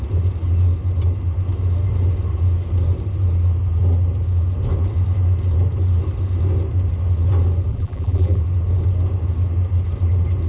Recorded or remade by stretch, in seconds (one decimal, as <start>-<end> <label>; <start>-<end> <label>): 0.0-7.7 recorded; 7.7-8.4 remade; 8.4-10.5 recorded